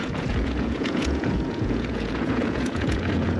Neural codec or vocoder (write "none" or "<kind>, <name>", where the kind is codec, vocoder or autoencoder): vocoder, Vocos